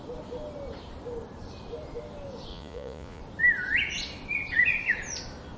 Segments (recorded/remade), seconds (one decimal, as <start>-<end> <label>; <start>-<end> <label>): 0.0-2.5 recorded; 2.5-3.2 remade; 3.2-5.6 recorded